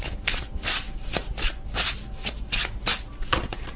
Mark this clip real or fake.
real